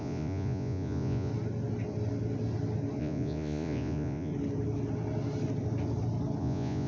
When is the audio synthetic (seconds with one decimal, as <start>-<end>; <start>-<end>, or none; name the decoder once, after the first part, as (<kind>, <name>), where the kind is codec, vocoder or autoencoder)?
0.0-1.3 (vocoder, Vocos); 3.0-4.3; 6.4-6.9